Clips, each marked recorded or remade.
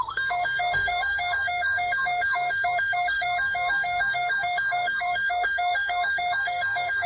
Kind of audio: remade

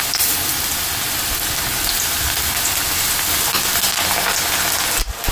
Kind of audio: recorded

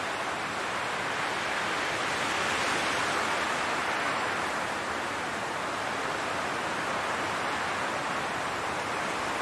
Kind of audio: recorded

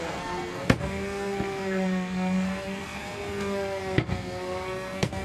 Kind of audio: remade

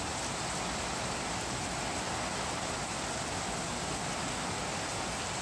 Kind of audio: recorded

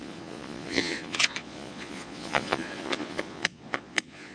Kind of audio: remade